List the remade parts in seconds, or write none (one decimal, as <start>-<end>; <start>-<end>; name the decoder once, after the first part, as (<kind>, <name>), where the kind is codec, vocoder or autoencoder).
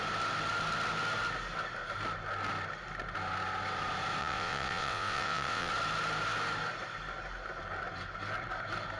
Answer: 4.2-5.7 (vocoder, WaveNeXt)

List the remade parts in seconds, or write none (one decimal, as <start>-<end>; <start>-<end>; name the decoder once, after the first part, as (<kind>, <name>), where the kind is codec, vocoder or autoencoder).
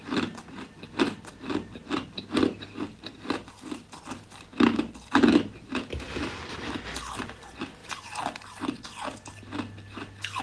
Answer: none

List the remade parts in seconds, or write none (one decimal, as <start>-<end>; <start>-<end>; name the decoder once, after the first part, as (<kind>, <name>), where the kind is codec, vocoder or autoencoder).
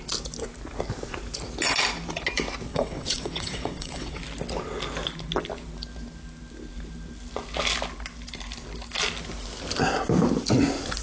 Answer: 2.7-4.2 (vocoder, WaveNeXt)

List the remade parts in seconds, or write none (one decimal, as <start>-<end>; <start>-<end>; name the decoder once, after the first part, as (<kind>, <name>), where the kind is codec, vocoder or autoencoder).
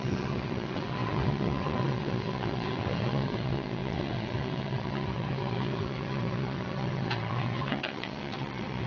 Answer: 0.0-8.9 (vocoder, WaveNeXt)